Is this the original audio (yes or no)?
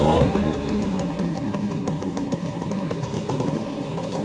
no